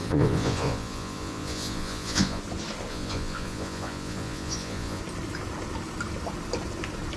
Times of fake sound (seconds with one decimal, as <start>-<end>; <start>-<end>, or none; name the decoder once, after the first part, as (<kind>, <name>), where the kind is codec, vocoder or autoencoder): 0.0-2.4 (vocoder, Vocos); 2.9-5.0

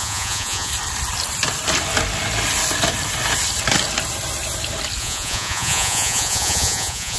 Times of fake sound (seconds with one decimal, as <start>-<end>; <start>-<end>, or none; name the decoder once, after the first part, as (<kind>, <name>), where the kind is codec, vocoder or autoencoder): 0.0-0.7 (vocoder, Vocos); 5.0-7.2

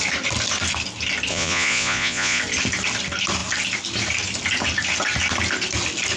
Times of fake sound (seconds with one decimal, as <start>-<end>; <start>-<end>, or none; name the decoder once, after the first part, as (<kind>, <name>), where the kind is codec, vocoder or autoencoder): 1.3-2.4 (vocoder, Vocos)